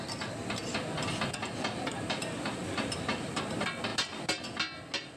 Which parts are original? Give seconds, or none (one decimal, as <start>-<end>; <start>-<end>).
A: 0.0-0.8; 3.4-3.9; 4.4-5.2